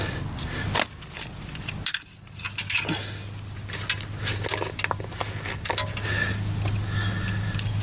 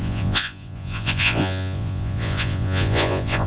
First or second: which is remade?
second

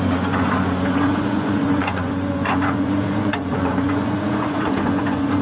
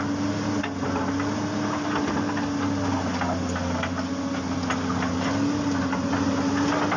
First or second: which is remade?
first